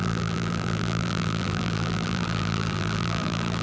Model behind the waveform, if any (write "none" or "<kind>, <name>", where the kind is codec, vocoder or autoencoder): vocoder, BigVGAN v2